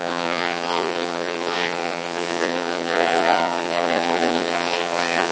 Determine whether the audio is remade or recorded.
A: remade